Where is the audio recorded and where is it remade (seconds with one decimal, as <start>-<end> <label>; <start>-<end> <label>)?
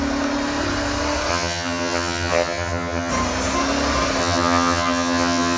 0.0-1.3 recorded; 1.3-3.1 remade; 3.1-4.2 recorded; 4.2-5.6 remade